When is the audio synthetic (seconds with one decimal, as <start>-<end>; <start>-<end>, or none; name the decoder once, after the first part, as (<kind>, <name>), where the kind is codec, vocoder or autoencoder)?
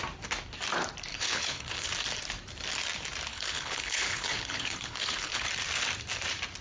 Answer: 1.1-1.9 (codec, HILCodec); 3.3-5.5